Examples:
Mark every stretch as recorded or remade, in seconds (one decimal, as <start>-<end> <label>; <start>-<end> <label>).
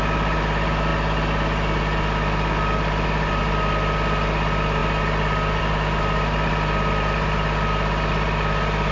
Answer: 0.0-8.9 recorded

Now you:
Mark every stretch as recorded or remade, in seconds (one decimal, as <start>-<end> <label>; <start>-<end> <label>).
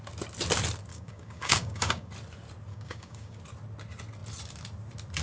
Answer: 0.0-0.9 recorded; 0.9-2.1 remade; 2.1-2.7 recorded; 2.7-3.4 remade; 3.4-5.2 recorded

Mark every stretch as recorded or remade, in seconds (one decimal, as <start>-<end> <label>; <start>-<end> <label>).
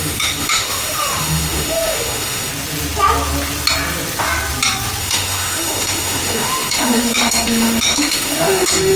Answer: 0.0-2.5 remade; 2.5-5.0 recorded; 5.0-9.0 remade